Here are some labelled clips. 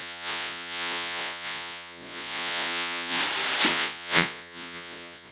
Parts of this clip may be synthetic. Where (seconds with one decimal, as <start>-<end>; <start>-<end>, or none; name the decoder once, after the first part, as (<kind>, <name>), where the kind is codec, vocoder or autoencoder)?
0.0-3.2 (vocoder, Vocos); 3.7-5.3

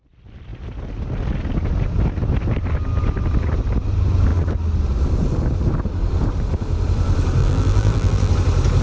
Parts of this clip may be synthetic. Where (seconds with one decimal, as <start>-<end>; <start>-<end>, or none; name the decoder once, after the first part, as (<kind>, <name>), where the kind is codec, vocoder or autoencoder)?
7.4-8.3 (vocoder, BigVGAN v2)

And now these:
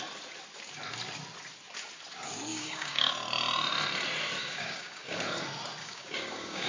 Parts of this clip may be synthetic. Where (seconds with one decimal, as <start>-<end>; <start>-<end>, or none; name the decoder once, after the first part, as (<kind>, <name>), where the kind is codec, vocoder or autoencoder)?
2.5-3.1 (codec, DAC); 4.4-5.2; 5.8-6.7

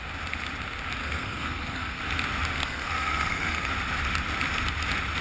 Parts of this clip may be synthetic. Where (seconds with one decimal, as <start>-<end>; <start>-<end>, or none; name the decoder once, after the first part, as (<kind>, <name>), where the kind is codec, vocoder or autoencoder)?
1.0-2.0 (codec, SNAC); 2.6-3.7

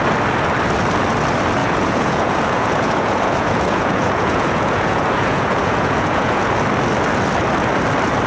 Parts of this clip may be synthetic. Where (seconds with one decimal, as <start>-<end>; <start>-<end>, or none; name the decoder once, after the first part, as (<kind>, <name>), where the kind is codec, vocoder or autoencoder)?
1.6-6.5 (vocoder, Vocos)

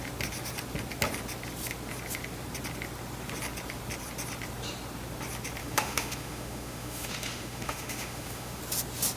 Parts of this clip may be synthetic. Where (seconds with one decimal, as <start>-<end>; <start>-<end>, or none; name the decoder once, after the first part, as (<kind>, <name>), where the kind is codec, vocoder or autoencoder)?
5.6-8.6 (autoencoder, DAC-VAE)